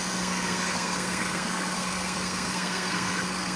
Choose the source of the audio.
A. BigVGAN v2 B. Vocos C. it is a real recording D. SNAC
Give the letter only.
D